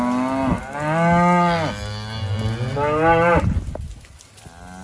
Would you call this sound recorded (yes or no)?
yes